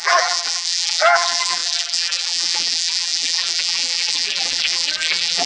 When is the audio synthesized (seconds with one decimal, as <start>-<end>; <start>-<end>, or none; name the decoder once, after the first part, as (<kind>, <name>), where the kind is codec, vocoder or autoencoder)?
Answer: 0.0-5.5 (vocoder, BigVGAN v2)